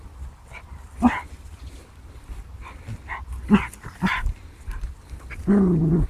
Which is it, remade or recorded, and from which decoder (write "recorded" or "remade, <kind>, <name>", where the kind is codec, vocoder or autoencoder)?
recorded